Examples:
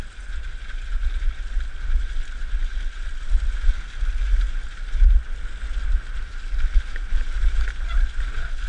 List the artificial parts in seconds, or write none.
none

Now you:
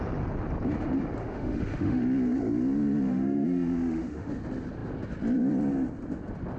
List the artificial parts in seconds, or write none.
1.2-2.0 (autoencoder, DAC-VAE); 3.1-4.3

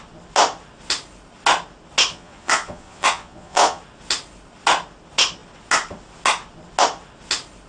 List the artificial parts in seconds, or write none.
2.1-3.8 (vocoder, Vocos)

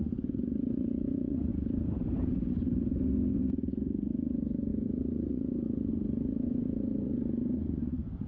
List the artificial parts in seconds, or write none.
0.0-1.5 (vocoder, Vocos); 3.5-8.3